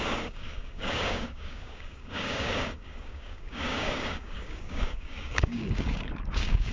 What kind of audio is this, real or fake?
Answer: fake